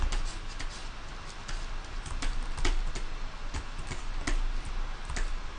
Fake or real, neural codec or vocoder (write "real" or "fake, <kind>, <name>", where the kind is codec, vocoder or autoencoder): real